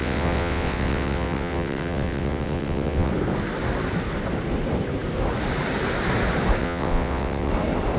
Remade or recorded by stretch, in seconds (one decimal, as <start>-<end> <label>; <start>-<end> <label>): 0.0-3.1 remade; 3.1-6.6 recorded; 6.6-7.5 remade; 7.5-8.0 recorded